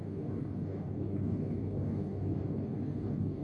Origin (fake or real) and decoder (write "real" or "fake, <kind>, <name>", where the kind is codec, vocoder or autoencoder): fake, codec, DAC